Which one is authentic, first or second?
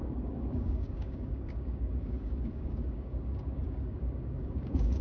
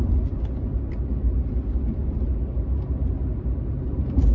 second